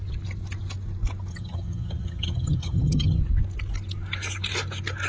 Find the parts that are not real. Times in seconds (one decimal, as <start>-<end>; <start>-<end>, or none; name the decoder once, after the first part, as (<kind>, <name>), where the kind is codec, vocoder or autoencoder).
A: 1.3-3.2 (vocoder, HiFi-GAN)